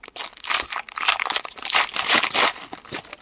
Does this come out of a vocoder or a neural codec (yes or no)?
no